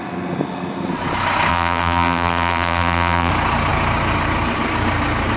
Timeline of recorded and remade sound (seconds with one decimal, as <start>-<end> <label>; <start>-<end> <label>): 0.0-1.5 recorded; 1.5-3.3 remade; 3.3-5.4 recorded